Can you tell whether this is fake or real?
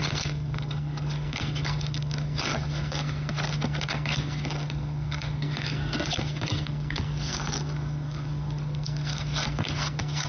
fake